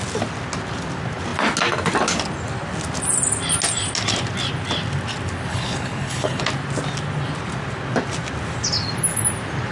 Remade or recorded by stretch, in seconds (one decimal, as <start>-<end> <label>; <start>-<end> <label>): 0.0-5.5 recorded; 5.5-6.4 remade; 6.4-9.7 recorded